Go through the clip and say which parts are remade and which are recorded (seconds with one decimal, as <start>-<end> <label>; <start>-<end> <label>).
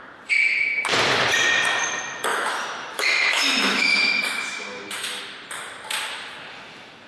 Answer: 0.0-2.3 recorded; 2.3-5.2 remade; 5.2-7.1 recorded